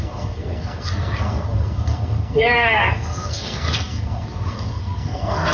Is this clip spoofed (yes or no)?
yes